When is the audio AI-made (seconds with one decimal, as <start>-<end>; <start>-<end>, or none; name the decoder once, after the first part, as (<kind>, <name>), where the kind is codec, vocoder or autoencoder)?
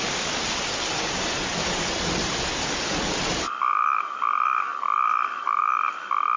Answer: none